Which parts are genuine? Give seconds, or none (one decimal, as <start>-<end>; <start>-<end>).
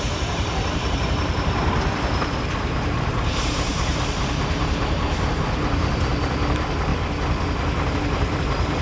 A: 6.9-7.9